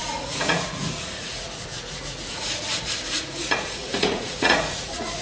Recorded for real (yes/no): no